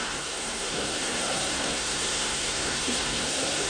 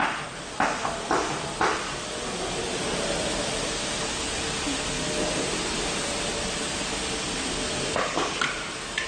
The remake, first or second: first